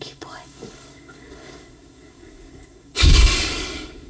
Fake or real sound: fake